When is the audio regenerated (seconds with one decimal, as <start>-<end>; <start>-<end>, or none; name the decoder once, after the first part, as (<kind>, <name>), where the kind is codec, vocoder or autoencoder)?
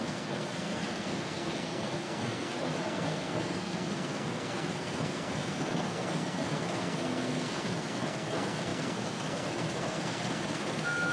0.0-11.1 (codec, SNAC)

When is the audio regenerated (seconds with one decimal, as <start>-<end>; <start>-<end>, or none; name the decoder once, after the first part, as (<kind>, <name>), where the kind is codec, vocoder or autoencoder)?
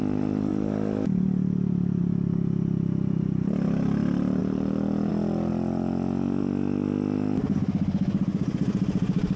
none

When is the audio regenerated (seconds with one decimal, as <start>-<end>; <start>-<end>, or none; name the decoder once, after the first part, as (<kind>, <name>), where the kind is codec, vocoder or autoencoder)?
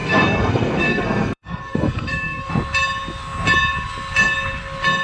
0.0-2.5 (codec, SNAC)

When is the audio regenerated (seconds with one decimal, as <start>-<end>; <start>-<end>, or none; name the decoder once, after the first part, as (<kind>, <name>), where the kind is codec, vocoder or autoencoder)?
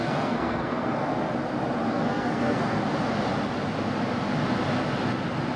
0.0-1.1 (codec, SNAC); 1.9-2.8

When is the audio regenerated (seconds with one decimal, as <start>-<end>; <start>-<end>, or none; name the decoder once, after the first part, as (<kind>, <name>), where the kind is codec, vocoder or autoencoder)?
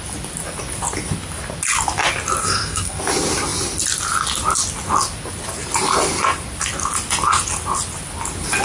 2.4-3.0 (codec, SNAC)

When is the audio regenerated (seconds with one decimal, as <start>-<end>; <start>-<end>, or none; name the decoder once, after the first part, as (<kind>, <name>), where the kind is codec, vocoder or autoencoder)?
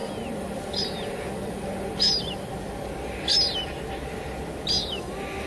none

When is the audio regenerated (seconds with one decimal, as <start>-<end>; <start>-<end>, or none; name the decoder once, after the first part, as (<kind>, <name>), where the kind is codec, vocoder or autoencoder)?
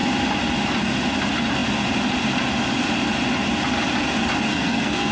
4.5-5.1 (codec, SNAC)